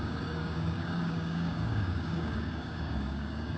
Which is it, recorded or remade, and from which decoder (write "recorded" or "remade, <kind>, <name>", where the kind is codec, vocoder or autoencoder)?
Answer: remade, codec, DAC